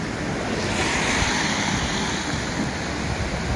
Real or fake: real